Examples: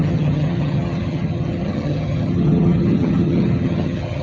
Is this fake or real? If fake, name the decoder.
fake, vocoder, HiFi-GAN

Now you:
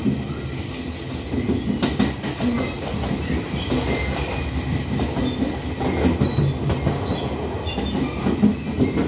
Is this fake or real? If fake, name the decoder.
real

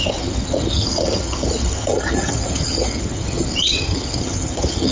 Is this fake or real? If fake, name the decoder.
fake, vocoder, HiFi-GAN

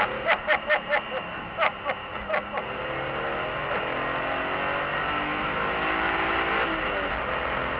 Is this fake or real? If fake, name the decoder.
real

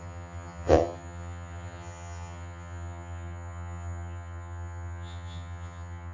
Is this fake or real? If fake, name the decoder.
fake, vocoder, HiFi-GAN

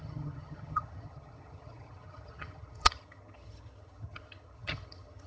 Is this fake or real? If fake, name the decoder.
fake, vocoder, HiFi-GAN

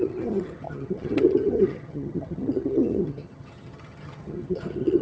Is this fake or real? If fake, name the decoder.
fake, vocoder, HiFi-GAN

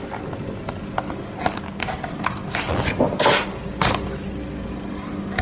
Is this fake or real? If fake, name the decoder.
real